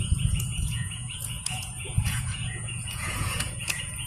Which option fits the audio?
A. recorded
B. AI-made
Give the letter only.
B